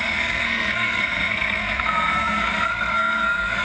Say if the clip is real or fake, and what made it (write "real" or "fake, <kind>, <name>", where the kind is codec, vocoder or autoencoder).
fake, codec, SNAC